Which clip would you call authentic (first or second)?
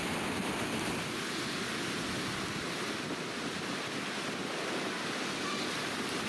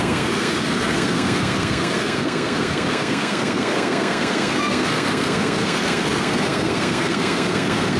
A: first